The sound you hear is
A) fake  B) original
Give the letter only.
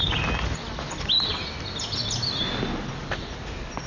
B